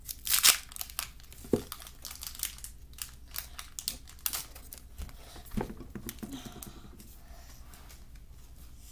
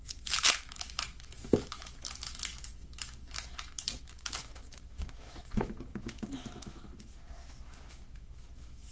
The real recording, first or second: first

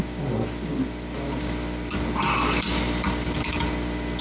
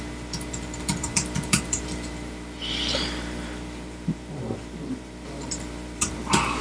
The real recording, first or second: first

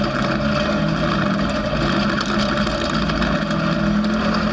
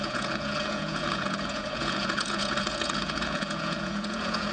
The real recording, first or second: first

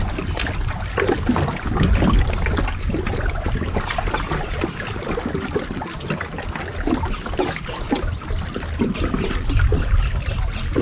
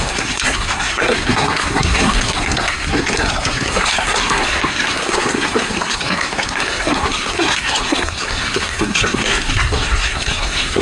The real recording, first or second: first